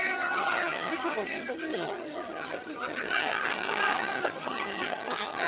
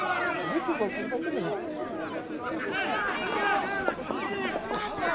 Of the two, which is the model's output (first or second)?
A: first